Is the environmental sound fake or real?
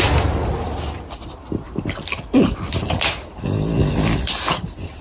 real